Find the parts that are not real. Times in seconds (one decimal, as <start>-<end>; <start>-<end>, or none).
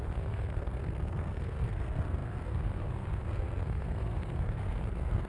0.0-5.3